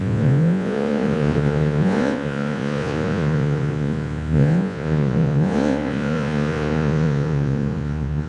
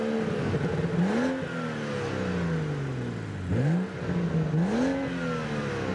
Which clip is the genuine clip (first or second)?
second